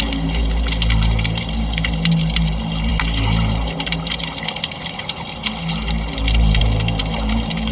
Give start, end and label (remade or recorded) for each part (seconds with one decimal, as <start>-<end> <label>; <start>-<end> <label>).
0.0-7.7 recorded